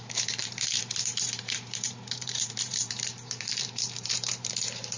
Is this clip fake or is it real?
fake